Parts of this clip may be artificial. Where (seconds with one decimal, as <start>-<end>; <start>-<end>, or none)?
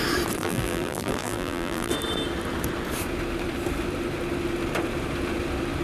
0.4-1.9